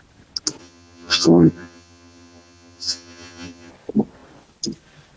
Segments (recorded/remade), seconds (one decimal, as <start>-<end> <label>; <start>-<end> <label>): 0.0-0.6 recorded; 0.6-3.7 remade; 3.7-5.2 recorded